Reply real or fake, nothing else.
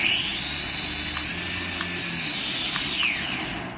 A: real